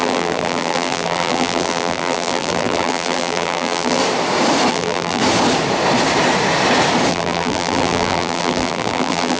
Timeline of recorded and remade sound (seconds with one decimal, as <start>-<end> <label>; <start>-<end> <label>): 0.0-4.0 remade; 4.0-4.7 recorded; 4.7-5.2 remade; 5.2-7.1 recorded; 7.1-9.4 remade